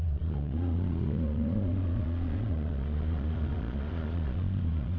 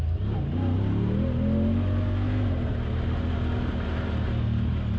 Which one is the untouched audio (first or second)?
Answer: second